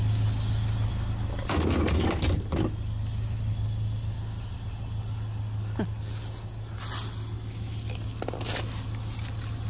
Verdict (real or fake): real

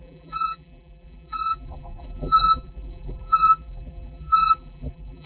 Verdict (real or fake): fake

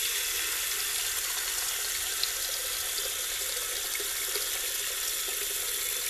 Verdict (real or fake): real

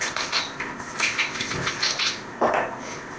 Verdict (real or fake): fake